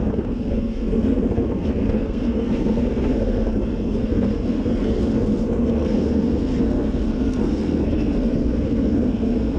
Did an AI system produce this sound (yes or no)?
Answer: yes